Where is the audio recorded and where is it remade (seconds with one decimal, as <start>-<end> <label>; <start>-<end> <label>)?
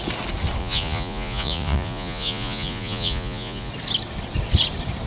0.0-0.6 recorded; 0.6-3.7 remade; 3.7-5.1 recorded